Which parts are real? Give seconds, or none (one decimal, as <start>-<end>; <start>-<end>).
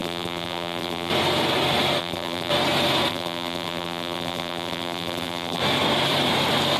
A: 1.1-2.0; 2.5-3.1; 5.6-6.8